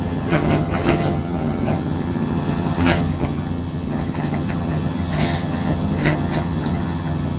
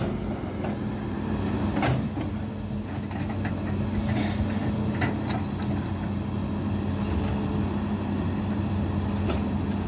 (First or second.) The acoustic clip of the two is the second